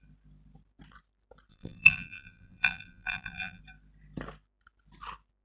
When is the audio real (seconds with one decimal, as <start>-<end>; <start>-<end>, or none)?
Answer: 0.0-1.5; 3.6-5.4